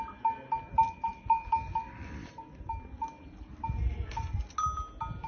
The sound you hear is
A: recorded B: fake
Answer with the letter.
A